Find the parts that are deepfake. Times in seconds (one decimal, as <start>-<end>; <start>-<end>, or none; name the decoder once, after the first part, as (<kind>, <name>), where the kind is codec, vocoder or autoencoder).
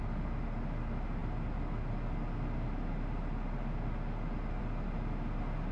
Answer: none